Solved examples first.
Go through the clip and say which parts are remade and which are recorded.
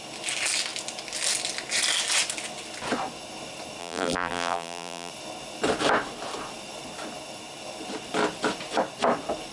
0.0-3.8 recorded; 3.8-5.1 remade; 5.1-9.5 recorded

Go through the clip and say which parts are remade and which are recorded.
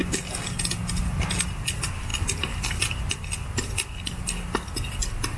0.0-5.4 recorded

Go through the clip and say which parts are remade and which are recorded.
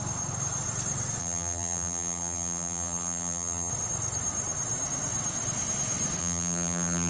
0.0-1.2 recorded; 1.2-3.7 remade; 3.7-6.2 recorded; 6.2-7.1 remade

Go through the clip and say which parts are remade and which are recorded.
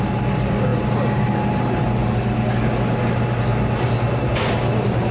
0.0-3.5 recorded; 3.5-5.1 remade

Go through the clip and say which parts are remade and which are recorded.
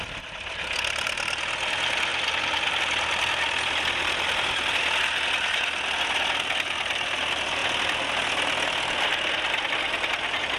0.0-7.6 recorded; 7.6-8.1 remade; 8.1-10.6 recorded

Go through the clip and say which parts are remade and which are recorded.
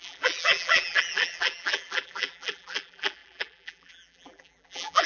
0.0-5.1 remade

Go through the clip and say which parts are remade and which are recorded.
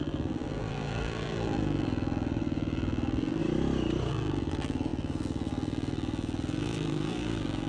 0.0-3.4 remade; 3.4-4.1 recorded; 4.1-7.7 remade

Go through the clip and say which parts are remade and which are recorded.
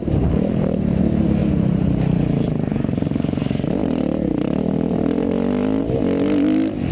0.0-1.0 remade; 1.0-1.4 recorded; 1.4-5.0 remade; 5.0-6.9 recorded